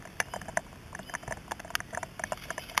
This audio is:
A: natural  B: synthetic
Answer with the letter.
A